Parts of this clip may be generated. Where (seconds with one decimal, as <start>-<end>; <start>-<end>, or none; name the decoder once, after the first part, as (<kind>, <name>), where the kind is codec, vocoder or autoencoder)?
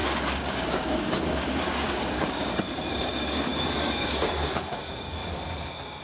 0.0-5.2 (codec, DAC)